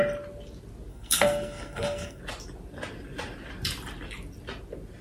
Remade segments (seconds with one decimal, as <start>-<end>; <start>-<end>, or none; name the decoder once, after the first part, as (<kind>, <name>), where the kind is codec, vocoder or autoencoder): 0.9-2.2 (codec, SNAC)